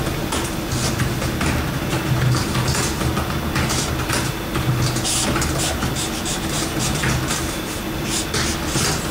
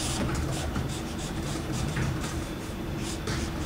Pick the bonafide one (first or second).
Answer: first